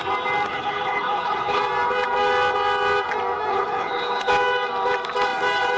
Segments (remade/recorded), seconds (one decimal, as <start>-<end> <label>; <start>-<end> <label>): 0.0-0.5 recorded; 0.5-1.6 remade; 1.6-3.5 recorded; 3.5-4.3 remade; 4.3-5.8 recorded